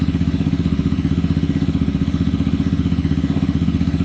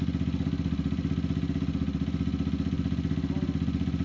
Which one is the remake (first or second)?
first